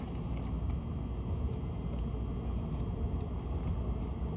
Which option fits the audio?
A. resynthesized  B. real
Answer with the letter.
B